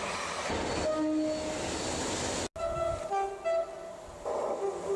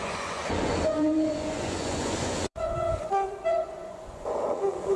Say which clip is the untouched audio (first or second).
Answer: first